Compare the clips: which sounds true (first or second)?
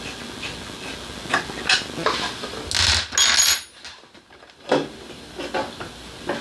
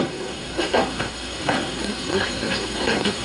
first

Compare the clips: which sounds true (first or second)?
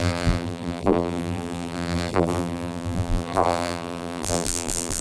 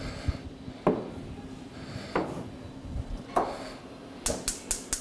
second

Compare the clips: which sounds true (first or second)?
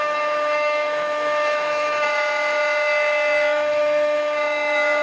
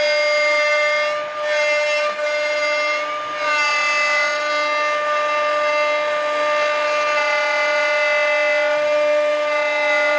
second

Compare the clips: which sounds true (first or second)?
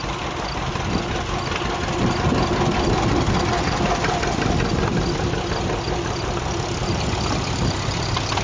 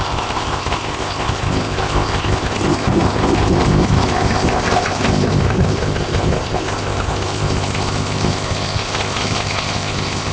first